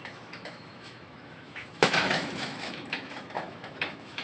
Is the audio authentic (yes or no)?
no